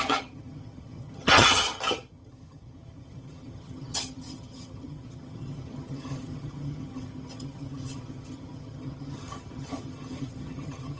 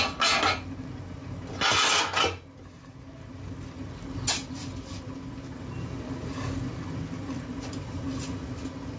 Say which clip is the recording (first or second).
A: second